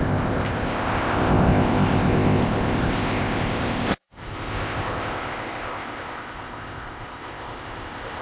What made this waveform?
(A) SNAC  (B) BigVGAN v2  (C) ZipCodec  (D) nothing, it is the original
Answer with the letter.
C